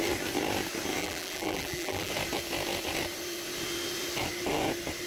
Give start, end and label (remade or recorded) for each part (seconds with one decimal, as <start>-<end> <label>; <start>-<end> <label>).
0.0-1.0 recorded; 1.0-2.1 remade; 2.1-5.1 recorded